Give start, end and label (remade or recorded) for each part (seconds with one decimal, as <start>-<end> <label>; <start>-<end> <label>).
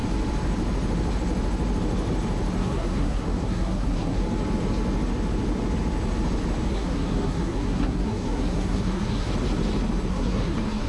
0.0-2.6 recorded; 2.6-4.2 remade; 4.2-6.7 recorded; 6.7-9.3 remade; 9.3-10.1 recorded; 10.1-10.9 remade